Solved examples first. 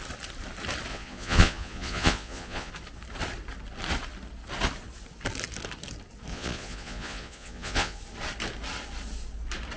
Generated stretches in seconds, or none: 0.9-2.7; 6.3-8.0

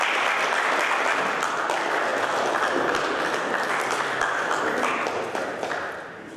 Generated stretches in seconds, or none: none

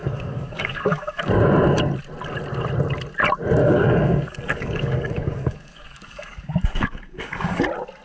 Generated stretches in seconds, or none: 0.0-1.3; 3.6-7.6

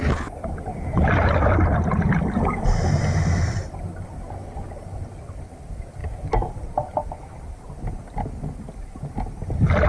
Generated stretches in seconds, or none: none

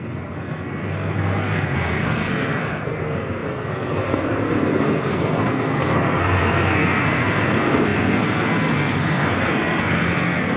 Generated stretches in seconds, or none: 0.0-10.6

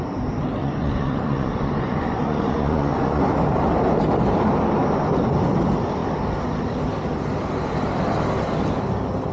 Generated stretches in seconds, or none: 0.6-3.2